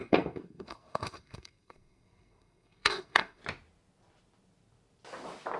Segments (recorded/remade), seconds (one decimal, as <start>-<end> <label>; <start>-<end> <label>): 0.0-3.4 remade; 3.4-5.6 recorded